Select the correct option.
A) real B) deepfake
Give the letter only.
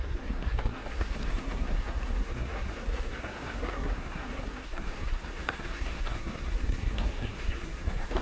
B